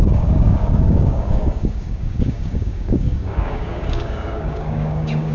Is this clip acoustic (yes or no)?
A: no